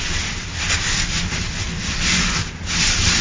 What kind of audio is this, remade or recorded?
recorded